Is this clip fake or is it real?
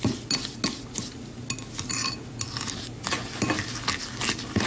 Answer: real